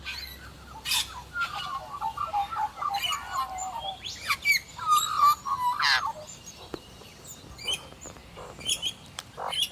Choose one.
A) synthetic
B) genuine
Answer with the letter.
B